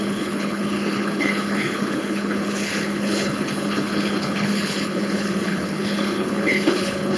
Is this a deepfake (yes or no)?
yes